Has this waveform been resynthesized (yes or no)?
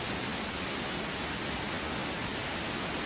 no